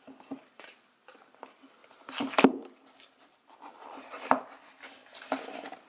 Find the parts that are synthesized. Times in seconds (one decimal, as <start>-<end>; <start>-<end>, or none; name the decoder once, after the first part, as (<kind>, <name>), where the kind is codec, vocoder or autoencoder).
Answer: 0.0-1.8 (vocoder, BigVGAN v2); 2.3-5.9